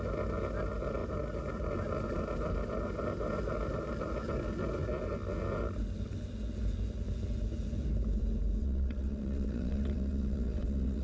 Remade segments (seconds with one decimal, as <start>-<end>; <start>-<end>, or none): 8.6-11.0